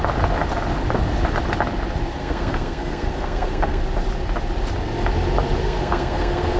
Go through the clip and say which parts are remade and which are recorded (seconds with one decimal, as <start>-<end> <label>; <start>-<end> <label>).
0.0-2.2 recorded; 2.2-3.8 remade; 3.8-5.6 recorded; 5.6-6.6 remade